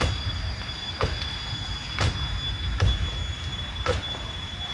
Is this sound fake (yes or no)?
no